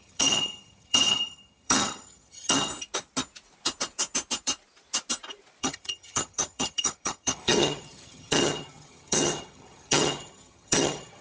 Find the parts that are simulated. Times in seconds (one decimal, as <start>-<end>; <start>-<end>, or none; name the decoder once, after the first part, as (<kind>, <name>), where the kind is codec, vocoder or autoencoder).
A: 0.0-2.7 (vocoder, HiFi-GAN); 5.6-11.2